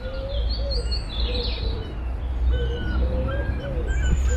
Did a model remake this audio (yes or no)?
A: no